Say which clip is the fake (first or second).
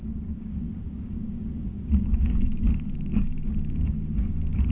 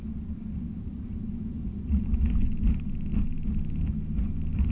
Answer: first